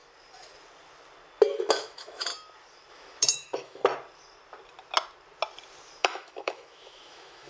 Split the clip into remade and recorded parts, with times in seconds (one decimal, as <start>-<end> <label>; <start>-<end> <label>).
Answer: 0.0-1.5 recorded; 1.5-2.3 remade; 2.3-2.9 recorded; 2.9-3.8 remade; 3.8-6.0 recorded; 6.0-7.5 remade